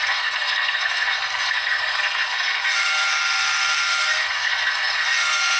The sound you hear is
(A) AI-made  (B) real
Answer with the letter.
A